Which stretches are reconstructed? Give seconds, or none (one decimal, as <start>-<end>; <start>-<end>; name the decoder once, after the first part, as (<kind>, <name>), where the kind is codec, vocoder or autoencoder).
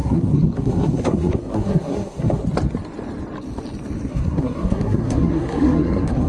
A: 0.0-2.4 (codec, SNAC); 4.1-6.3